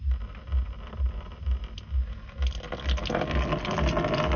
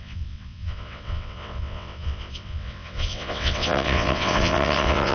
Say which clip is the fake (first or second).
second